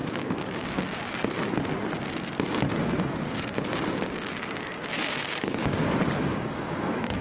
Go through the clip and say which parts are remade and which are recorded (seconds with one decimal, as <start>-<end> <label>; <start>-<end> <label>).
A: 0.0-1.1 remade; 1.1-2.7 recorded; 2.7-7.2 remade